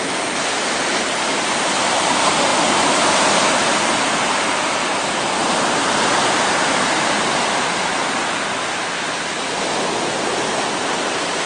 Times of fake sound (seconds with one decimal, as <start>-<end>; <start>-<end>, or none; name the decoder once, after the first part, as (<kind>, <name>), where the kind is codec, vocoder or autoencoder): 0.0-7.9 (vocoder, BigVGAN v2); 10.8-11.5